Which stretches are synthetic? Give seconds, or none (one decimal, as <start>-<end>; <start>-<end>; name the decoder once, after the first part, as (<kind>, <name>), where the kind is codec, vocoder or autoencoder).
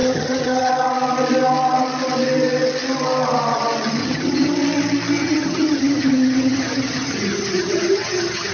0.0-0.7 (vocoder, HiFi-GAN); 4.0-4.5; 5.2-8.5